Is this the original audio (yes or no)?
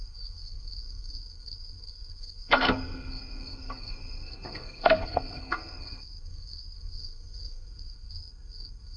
no